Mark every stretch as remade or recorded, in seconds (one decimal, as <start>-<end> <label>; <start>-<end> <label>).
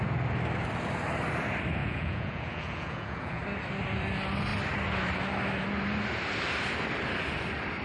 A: 0.0-1.8 recorded; 1.8-3.4 remade; 3.4-7.8 recorded